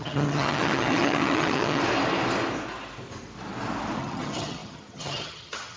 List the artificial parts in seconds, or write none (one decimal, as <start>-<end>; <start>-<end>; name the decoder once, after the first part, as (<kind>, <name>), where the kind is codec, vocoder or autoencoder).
0.0-1.8 (vocoder, HiFi-GAN); 4.0-5.8